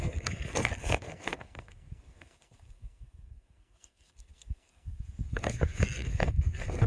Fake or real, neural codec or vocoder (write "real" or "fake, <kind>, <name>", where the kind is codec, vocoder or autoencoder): fake, codec, SNAC